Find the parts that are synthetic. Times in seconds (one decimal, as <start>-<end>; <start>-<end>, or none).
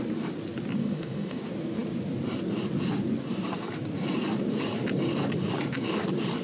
0.8-1.4